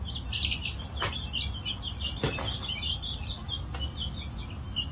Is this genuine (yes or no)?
yes